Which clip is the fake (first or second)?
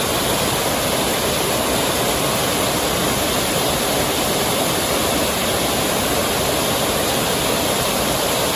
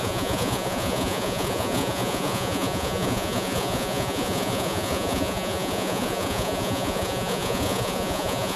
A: second